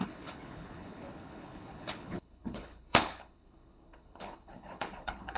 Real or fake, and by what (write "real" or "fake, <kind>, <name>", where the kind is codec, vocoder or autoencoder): fake, codec, HILCodec